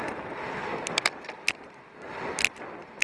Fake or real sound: real